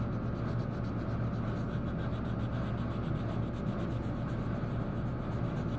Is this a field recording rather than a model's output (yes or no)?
yes